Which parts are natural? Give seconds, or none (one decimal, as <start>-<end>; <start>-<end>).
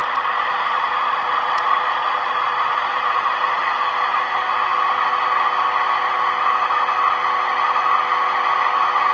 3.7-9.1